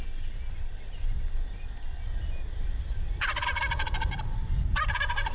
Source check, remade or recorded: recorded